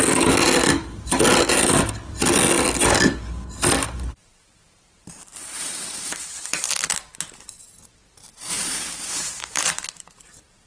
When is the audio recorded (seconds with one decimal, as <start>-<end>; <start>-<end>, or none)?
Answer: 0.0-3.8; 7.0-8.5; 9.6-10.7